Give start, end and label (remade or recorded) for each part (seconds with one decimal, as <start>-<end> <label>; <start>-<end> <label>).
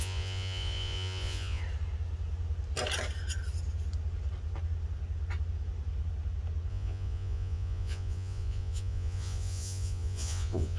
0.0-1.6 remade; 1.6-6.7 recorded; 6.7-10.8 remade